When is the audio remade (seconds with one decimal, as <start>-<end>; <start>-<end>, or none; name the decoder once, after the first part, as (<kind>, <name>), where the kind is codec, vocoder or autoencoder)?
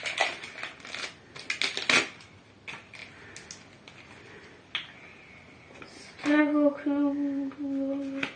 none